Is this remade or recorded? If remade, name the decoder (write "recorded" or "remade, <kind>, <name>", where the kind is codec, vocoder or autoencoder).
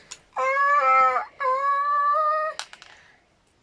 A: recorded